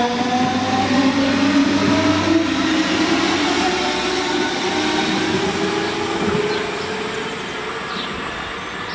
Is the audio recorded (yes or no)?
yes